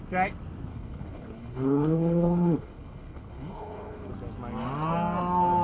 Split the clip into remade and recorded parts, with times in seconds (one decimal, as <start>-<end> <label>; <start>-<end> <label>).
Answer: 0.0-0.7 recorded; 0.7-4.1 remade; 4.1-5.6 recorded

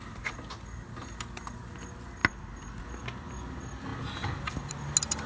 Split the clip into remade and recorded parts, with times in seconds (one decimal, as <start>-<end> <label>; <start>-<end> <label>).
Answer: 0.0-5.3 recorded

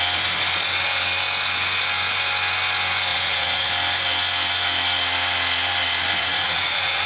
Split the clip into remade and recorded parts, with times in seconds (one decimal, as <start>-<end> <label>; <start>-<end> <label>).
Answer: 0.0-3.1 recorded; 3.1-3.7 remade; 3.7-6.2 recorded; 6.2-7.1 remade

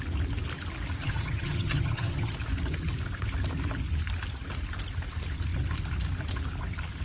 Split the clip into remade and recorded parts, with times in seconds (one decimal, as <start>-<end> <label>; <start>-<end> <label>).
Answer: 0.0-1.0 recorded; 1.0-2.3 remade; 2.3-7.0 recorded

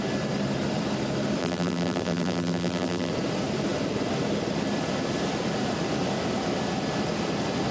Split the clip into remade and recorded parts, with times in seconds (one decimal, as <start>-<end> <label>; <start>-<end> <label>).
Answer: 0.0-1.4 recorded; 1.4-3.1 remade; 3.1-7.7 recorded

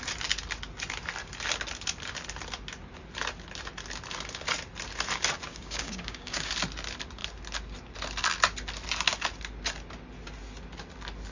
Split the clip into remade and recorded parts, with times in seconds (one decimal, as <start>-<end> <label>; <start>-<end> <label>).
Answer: 0.0-5.5 recorded; 5.5-6.5 remade; 6.5-11.3 recorded

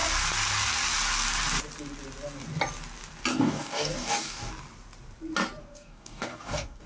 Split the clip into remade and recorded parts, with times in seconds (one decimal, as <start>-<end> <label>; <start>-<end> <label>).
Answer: 0.0-3.3 recorded; 3.3-4.5 remade; 4.5-5.6 recorded; 5.6-6.9 remade